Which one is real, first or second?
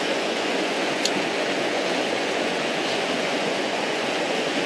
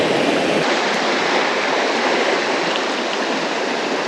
second